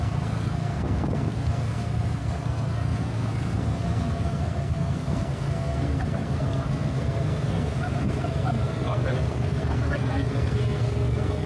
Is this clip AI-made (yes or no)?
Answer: yes